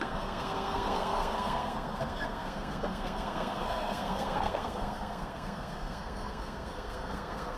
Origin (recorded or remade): remade